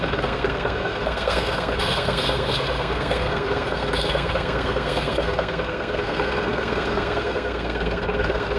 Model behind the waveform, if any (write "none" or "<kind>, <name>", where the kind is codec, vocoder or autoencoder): codec, SNAC